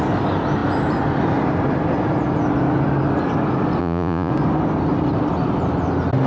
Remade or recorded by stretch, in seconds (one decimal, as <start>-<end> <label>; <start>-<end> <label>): 0.0-3.8 recorded; 3.8-4.3 remade; 4.3-6.3 recorded